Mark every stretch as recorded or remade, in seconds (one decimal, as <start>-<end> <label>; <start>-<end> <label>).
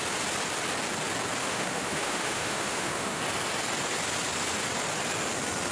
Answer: 0.0-1.4 recorded; 1.4-3.2 remade; 3.2-5.7 recorded